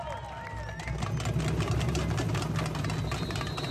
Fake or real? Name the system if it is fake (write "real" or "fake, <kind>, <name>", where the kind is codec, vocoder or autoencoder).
real